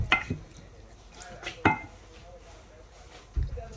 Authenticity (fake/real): real